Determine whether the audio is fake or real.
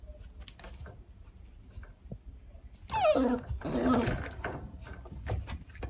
real